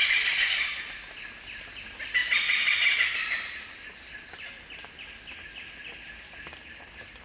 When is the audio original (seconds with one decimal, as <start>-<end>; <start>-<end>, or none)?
0.8-7.2